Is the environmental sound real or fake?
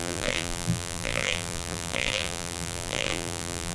fake